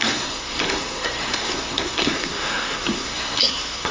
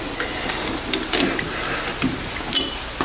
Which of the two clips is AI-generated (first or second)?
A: first